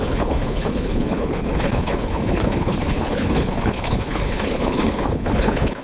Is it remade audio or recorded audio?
remade